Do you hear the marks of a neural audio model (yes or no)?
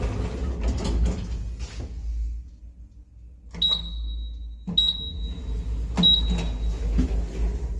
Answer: no